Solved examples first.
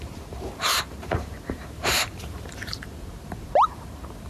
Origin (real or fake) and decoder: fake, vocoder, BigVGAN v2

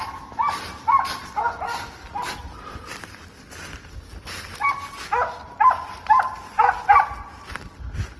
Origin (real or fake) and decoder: real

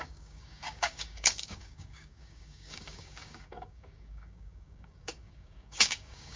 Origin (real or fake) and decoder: fake, codec, DAC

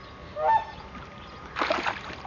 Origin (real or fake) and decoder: real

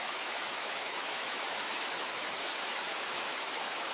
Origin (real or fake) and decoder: fake, autoencoder, DAC-VAE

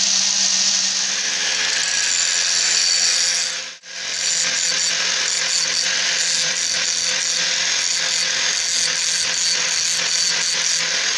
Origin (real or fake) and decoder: real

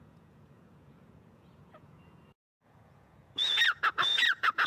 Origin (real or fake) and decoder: fake, vocoder, Vocos